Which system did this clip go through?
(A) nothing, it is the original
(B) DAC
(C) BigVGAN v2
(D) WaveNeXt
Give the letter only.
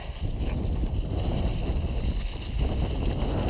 A